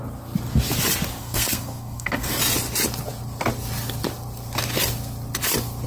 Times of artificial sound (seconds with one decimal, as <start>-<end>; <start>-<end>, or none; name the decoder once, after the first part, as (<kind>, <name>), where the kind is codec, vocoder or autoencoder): 1.2-2.3 (codec, SNAC)